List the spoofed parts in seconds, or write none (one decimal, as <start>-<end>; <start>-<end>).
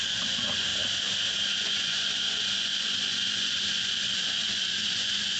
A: 0.0-0.7; 1.6-5.4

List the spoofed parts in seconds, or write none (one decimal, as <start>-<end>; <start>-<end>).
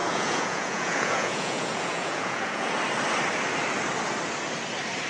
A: 0.0-2.8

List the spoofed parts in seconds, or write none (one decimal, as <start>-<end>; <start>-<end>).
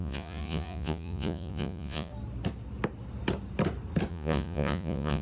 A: 0.0-2.1; 4.1-5.2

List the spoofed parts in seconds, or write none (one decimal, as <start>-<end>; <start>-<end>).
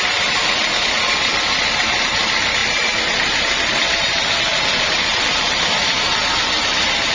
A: none